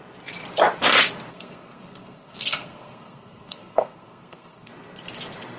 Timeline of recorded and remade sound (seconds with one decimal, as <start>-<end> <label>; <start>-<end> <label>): 0.0-1.3 recorded; 1.3-4.7 remade; 4.7-5.6 recorded